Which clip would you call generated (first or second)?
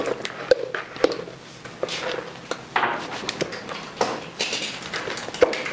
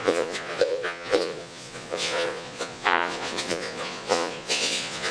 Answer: second